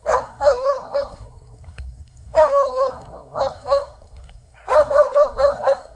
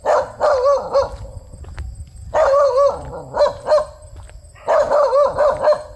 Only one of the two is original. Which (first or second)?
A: second